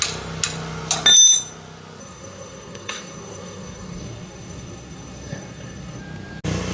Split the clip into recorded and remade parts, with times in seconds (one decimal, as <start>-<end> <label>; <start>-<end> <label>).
0.0-2.0 recorded; 2.0-6.0 remade; 6.0-6.7 recorded